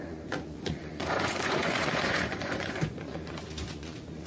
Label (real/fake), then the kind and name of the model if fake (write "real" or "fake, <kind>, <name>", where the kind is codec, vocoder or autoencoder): fake, vocoder, Vocos